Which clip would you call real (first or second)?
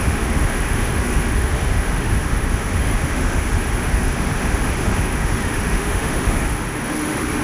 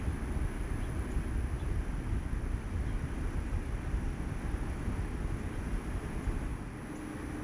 second